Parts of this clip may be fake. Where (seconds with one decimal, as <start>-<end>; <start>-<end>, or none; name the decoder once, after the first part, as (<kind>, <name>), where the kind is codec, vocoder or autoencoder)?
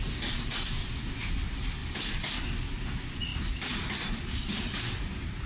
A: 0.8-1.3 (vocoder, BigVGAN v2); 3.3-4.6